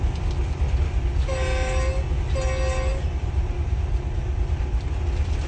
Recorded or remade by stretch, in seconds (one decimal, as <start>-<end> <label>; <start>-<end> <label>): 0.0-2.9 recorded; 2.9-4.9 remade; 4.9-5.5 recorded